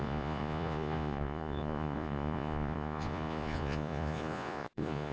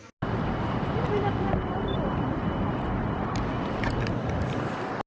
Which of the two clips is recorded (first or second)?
second